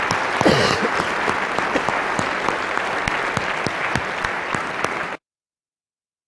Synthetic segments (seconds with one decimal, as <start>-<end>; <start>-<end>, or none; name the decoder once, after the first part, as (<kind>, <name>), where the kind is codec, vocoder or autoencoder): none

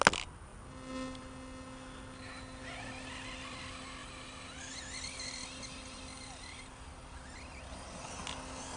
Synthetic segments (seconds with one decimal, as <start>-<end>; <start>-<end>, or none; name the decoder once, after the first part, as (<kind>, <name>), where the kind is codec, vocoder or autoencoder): none

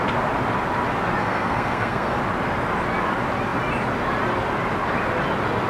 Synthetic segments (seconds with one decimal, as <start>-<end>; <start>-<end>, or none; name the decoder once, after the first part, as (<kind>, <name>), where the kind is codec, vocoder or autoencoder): 1.2-2.2 (codec, SNAC)

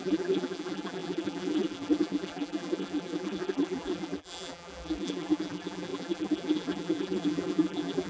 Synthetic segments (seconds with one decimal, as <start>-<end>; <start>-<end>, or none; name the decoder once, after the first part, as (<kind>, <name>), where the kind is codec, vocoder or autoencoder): 0.0-8.1 (vocoder, BigVGAN v2)

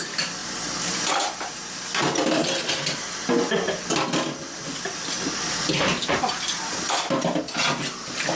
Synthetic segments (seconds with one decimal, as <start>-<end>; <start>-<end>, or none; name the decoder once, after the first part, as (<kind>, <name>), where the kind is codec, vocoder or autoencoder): none